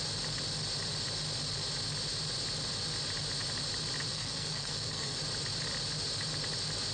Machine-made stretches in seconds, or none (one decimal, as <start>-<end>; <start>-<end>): 4.1-5.2